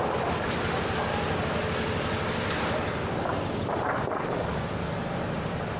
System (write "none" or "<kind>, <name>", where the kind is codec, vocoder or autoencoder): none